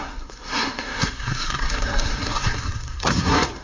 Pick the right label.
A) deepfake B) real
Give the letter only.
A